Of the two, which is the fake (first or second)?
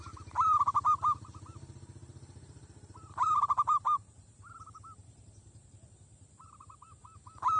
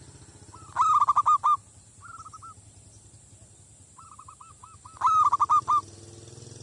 first